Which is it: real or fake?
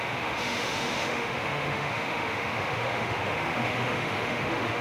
fake